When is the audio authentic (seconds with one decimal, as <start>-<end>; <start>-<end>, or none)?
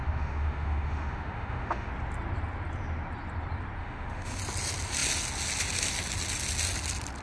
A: 1.9-3.8; 4.4-7.2